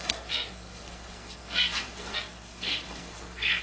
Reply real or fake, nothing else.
fake